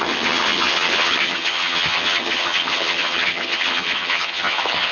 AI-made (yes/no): yes